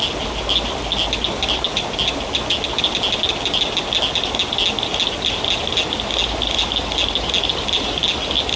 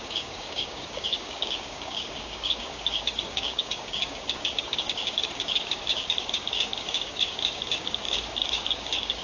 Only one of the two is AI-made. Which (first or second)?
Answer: second